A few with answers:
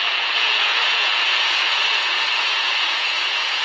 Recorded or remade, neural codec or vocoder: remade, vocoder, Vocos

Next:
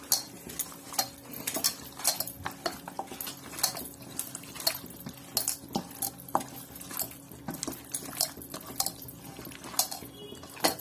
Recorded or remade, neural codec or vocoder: recorded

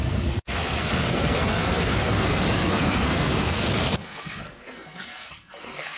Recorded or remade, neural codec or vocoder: remade, codec, SNAC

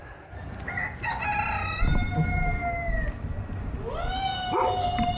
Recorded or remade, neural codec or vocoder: recorded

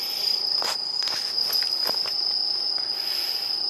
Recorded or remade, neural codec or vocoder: recorded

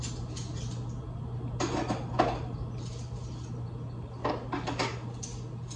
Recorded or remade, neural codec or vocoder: recorded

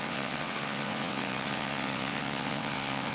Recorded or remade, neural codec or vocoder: remade, vocoder, WaveNeXt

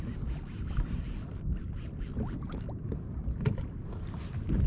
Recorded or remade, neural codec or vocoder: recorded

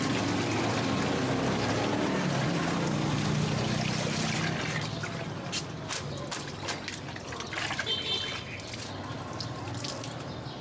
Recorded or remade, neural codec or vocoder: recorded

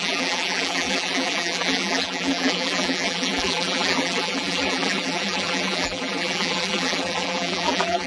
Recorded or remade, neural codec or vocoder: remade, vocoder, BigVGAN v2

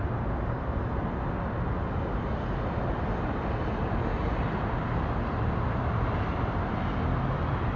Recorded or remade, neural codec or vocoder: recorded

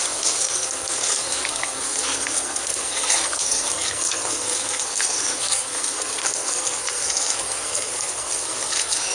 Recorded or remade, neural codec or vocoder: remade, codec, SNAC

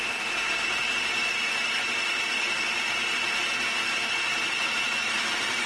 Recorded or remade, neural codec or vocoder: remade, vocoder, BigVGAN v2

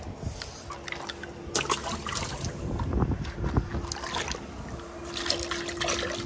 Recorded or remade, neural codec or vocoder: recorded